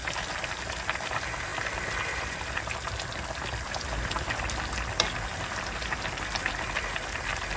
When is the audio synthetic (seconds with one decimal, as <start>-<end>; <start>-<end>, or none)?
none